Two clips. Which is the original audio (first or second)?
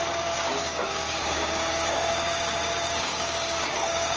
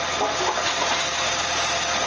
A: second